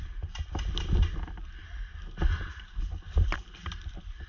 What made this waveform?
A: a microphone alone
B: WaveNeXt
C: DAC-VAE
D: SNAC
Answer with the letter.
A